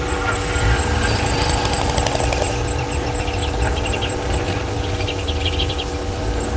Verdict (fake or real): fake